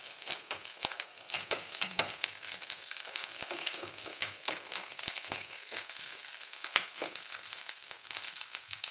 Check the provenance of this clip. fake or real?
fake